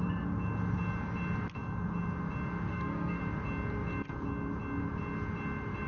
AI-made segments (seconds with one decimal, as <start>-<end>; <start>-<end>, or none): 2.7-3.2